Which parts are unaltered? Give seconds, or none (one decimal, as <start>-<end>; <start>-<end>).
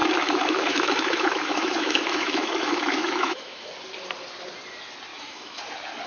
3.7-5.1; 5.6-6.1